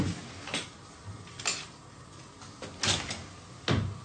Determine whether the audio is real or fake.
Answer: real